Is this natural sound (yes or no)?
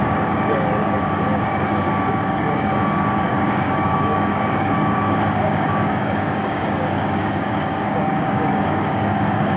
no